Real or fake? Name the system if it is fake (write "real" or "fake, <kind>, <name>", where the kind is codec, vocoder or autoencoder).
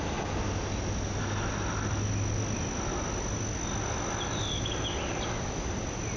real